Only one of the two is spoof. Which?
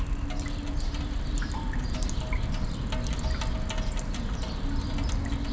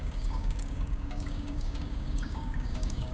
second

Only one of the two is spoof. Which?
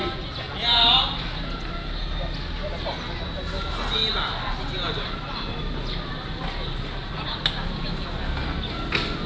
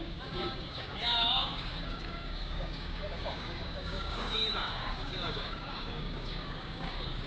second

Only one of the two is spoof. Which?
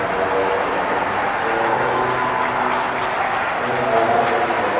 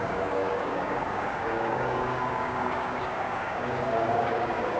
second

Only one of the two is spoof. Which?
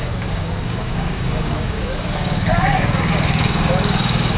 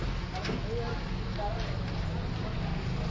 first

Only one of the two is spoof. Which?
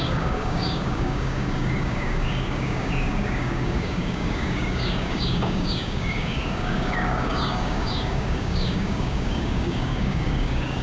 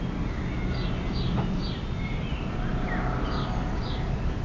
first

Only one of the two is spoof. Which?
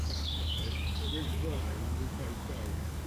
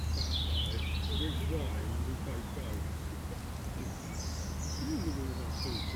first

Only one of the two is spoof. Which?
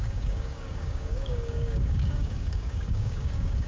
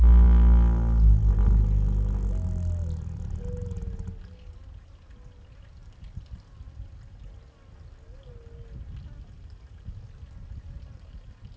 first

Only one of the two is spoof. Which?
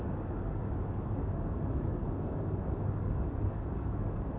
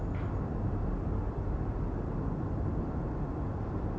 first